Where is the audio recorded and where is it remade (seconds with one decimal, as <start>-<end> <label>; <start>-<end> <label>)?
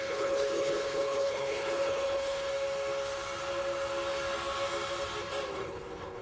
0.0-2.5 remade; 2.5-5.5 recorded; 5.5-6.2 remade